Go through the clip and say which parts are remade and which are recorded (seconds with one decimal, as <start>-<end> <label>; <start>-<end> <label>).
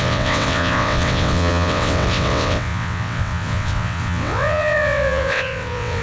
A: 0.0-6.0 remade